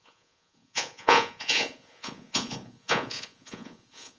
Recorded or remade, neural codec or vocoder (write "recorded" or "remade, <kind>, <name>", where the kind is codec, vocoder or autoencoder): remade, vocoder, Vocos